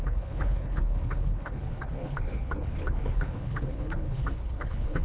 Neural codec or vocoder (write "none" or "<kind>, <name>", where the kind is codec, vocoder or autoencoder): codec, HILCodec